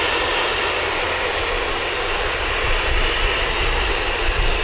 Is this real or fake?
real